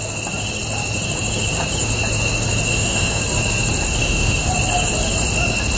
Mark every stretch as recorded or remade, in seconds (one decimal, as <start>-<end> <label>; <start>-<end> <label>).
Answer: 0.0-2.7 recorded; 2.7-3.2 remade; 3.2-4.0 recorded; 4.0-4.5 remade; 4.5-5.8 recorded